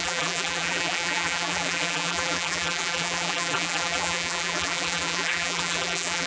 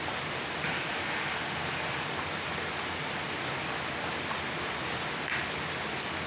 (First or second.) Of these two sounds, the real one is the second